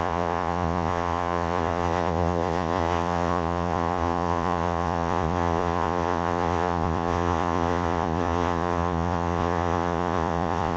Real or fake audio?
fake